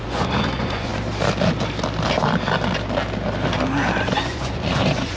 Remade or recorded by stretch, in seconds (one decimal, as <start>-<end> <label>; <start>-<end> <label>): 0.0-0.9 remade; 0.9-4.0 recorded; 4.0-5.2 remade